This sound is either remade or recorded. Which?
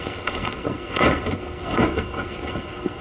remade